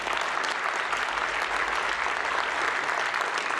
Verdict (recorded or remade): recorded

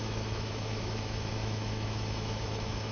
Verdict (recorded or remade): remade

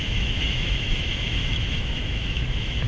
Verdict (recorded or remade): remade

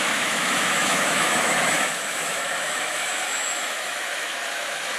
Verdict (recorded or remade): remade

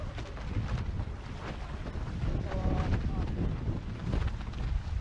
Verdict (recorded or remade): recorded